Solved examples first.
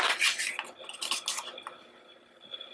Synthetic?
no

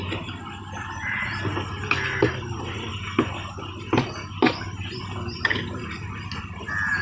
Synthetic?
no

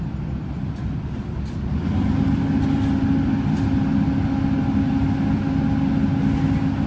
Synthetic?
no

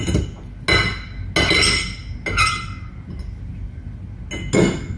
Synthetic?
no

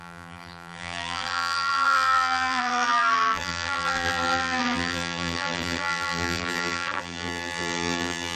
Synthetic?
yes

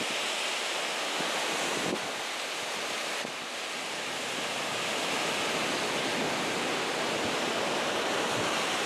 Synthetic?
no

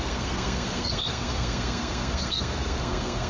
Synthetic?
yes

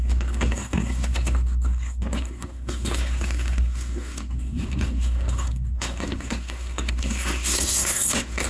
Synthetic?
yes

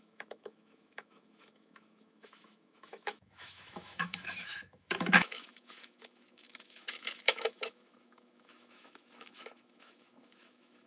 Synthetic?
yes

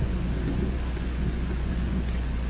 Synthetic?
yes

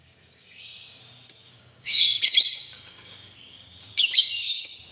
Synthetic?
yes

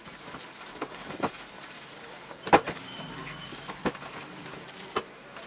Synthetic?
yes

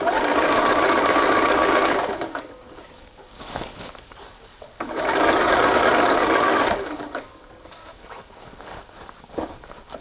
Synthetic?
yes